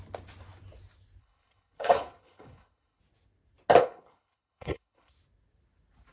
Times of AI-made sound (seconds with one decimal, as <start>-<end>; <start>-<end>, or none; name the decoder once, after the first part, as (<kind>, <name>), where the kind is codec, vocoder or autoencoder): 1.2-3.0 (codec, HILCodec); 3.8-5.1